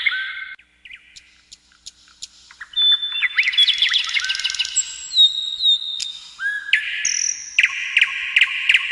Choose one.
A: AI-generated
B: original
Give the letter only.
B